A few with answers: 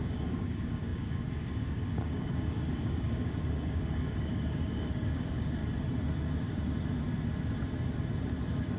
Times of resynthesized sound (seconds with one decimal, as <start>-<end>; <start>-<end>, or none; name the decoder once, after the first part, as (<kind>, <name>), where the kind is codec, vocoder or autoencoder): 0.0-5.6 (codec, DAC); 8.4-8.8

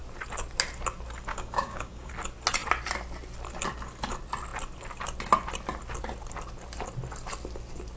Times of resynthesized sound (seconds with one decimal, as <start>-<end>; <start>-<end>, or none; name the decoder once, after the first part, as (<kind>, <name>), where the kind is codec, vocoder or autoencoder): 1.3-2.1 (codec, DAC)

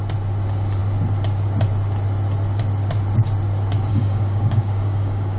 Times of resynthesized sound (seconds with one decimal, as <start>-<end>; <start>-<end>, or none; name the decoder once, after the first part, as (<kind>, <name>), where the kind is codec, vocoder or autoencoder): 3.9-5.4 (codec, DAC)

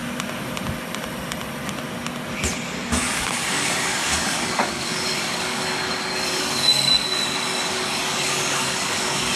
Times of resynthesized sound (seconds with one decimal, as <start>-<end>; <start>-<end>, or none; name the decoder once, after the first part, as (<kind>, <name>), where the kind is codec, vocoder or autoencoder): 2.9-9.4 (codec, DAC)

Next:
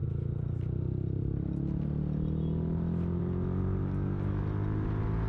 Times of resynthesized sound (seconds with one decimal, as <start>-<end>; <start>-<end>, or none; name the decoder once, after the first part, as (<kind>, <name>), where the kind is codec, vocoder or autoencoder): 3.8-4.4 (codec, DAC)